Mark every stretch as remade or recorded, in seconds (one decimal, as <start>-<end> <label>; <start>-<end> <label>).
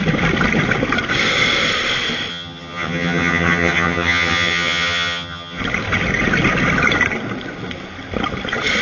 0.0-2.3 recorded; 2.3-5.6 remade; 5.6-8.8 recorded